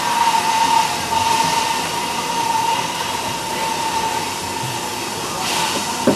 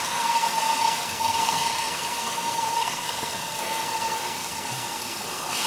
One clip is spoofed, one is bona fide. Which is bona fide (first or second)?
first